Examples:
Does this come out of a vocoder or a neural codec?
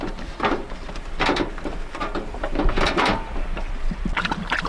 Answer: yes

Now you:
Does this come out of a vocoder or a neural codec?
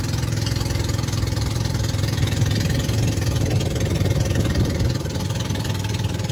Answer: yes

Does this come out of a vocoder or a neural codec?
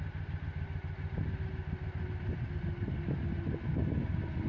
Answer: no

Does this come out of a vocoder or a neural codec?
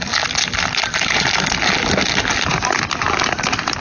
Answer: no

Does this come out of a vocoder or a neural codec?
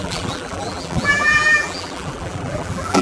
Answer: yes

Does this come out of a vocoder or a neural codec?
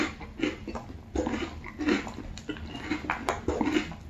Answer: no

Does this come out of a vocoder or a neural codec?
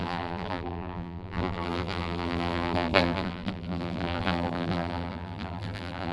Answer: yes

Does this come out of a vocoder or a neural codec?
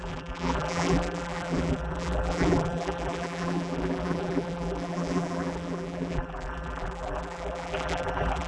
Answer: yes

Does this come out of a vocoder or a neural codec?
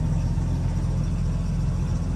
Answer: no